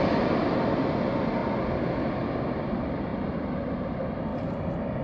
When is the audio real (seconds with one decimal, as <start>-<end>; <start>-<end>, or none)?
0.0-3.1; 3.6-4.3